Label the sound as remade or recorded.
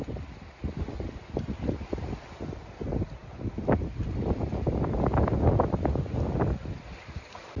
recorded